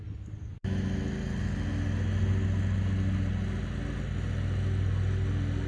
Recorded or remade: recorded